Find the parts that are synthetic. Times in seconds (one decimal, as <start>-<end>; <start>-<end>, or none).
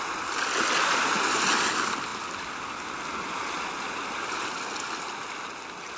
none